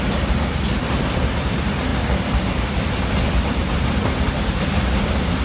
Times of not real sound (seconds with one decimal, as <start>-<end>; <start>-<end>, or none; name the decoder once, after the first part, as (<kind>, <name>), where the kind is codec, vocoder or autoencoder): none